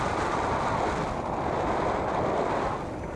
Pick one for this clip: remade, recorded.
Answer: recorded